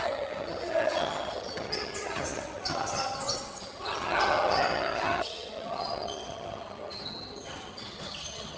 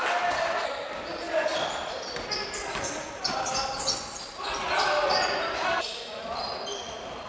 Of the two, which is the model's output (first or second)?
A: first